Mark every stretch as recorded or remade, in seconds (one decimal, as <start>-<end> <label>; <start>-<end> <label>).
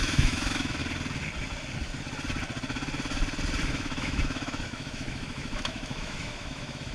0.0-0.8 remade; 0.8-3.7 recorded; 3.7-6.9 remade